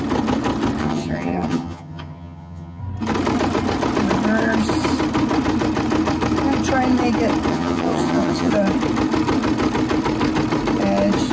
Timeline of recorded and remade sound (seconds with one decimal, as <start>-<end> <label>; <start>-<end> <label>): 0.0-0.8 recorded; 0.8-2.8 remade; 2.8-7.5 recorded; 7.5-8.5 remade; 8.5-11.3 recorded